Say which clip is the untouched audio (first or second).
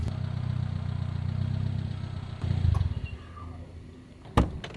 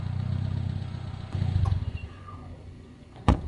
first